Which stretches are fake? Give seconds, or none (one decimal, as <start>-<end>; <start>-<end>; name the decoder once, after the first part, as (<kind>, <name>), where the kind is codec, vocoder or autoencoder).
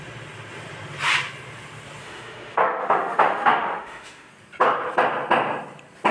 2.0-4.3 (autoencoder, DAC-VAE)